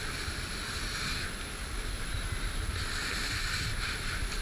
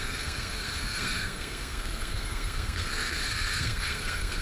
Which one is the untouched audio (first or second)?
first